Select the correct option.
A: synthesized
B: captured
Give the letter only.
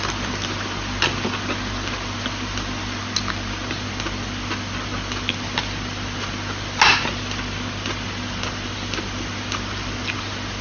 B